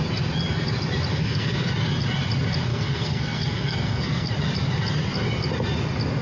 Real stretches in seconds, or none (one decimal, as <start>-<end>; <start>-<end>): 0.0-1.1; 1.7-2.7; 4.3-6.2